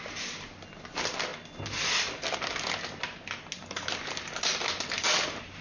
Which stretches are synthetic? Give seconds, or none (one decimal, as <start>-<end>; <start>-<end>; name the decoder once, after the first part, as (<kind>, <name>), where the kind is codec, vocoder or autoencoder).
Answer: none